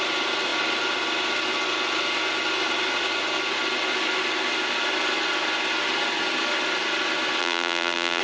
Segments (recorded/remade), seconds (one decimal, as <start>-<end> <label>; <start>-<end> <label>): 0.0-7.4 recorded; 7.4-8.2 remade